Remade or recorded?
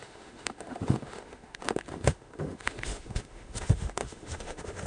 remade